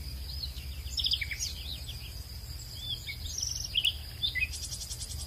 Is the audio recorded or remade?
recorded